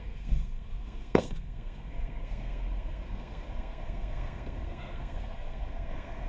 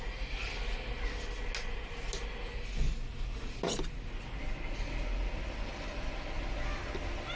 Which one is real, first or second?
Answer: second